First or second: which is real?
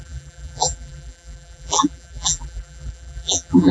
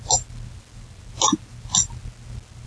second